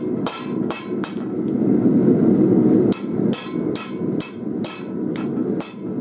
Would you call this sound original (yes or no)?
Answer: yes